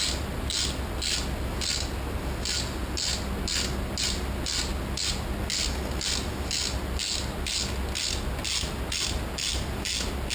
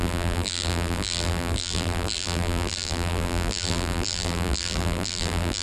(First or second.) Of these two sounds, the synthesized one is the second